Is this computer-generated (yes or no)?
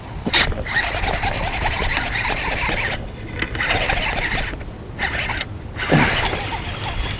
no